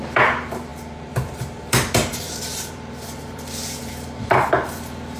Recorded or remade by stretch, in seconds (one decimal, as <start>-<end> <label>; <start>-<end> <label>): 0.0-5.2 remade